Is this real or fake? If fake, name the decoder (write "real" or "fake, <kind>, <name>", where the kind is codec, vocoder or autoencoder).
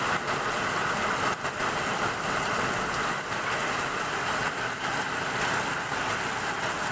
real